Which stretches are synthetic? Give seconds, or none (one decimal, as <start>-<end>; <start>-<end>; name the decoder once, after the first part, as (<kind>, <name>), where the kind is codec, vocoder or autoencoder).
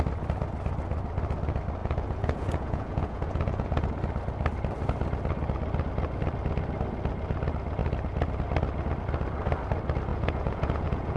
1.8-3.9 (vocoder, Vocos); 10.1-11.2